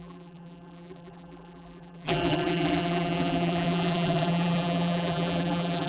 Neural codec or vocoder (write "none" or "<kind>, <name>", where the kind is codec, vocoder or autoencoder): vocoder, BigVGAN v2